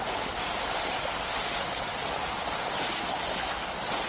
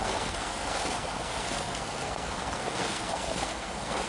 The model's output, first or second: second